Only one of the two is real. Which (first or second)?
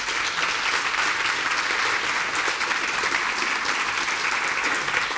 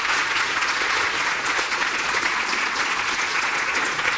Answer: first